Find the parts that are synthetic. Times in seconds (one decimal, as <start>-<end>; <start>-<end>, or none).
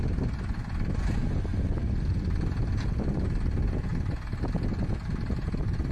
none